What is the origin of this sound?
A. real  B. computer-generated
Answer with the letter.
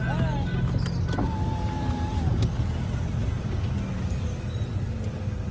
A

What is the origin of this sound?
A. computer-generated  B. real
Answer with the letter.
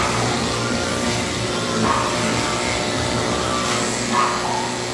B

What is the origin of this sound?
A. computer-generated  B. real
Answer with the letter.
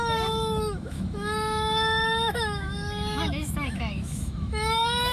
A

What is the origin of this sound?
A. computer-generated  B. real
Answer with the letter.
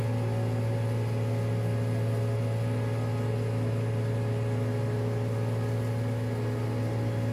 B